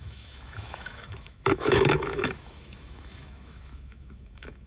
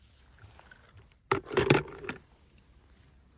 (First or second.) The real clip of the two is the second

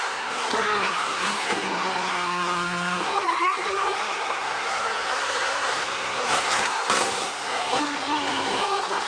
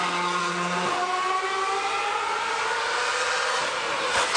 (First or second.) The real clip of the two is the second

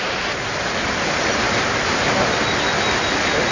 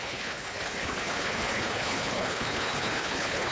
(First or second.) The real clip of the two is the first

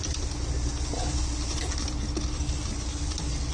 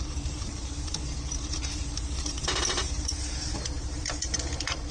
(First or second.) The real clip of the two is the first